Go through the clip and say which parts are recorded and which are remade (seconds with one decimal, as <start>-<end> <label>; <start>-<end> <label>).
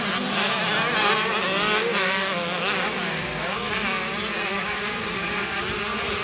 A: 0.0-1.8 recorded; 1.8-3.7 remade; 3.7-4.5 recorded; 4.5-5.6 remade; 5.6-6.2 recorded